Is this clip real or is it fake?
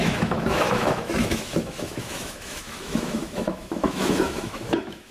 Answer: fake